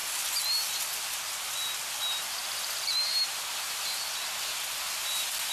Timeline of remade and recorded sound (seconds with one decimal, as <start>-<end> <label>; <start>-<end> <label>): 0.0-2.4 recorded; 2.4-3.5 remade; 3.5-5.5 recorded